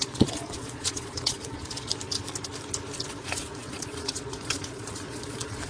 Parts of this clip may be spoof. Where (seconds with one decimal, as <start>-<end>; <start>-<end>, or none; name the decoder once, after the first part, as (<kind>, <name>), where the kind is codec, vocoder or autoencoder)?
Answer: 0.0-1.9 (vocoder, Vocos); 3.1-5.7